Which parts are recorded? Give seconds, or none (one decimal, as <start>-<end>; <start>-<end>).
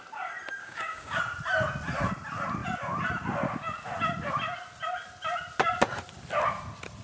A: 0.0-0.6; 1.2-7.0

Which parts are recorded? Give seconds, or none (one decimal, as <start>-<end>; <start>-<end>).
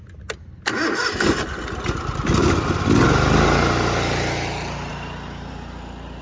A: 0.0-6.2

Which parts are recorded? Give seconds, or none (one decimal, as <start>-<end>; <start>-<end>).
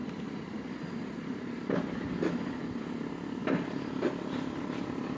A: 2.1-3.4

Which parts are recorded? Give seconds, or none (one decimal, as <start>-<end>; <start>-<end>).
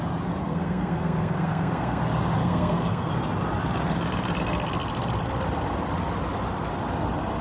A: 0.0-0.4; 2.0-2.4; 3.1-7.4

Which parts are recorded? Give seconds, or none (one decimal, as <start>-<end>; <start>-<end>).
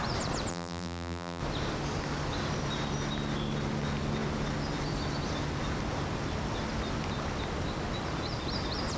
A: 0.0-0.5; 1.4-9.0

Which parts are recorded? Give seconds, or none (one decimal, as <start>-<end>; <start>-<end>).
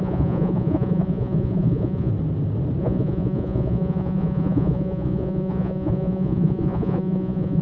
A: 2.1-2.8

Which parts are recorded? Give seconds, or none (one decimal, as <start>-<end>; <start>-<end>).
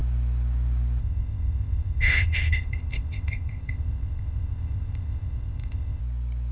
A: 0.0-1.0; 6.0-6.5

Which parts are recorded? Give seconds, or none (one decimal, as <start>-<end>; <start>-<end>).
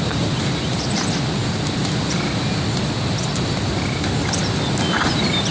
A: 0.0-5.5